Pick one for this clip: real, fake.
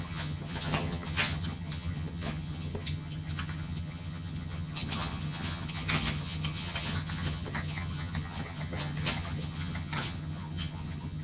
fake